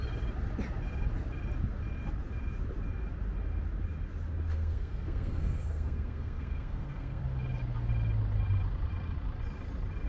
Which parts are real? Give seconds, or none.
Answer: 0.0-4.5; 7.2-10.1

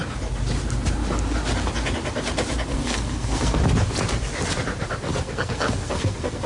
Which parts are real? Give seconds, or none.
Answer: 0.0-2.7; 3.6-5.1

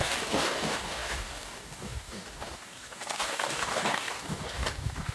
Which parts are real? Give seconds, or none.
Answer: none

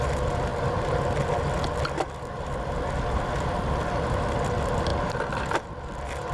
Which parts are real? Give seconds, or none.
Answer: 0.0-6.3

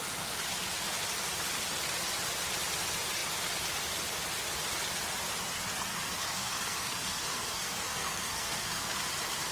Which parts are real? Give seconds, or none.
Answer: 0.0-5.9; 9.1-9.5